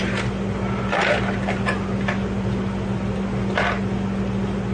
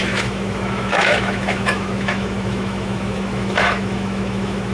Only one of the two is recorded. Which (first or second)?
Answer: first